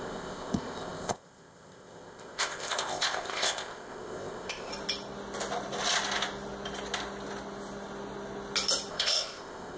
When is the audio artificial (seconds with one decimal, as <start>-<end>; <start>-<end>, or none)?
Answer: 0.0-4.7; 8.9-9.8